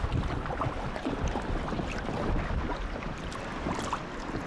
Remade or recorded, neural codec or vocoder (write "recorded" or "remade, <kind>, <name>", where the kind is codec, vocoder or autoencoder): recorded